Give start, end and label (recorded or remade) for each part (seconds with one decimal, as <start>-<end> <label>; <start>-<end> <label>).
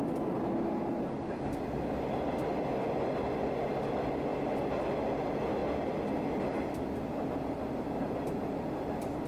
0.0-9.3 recorded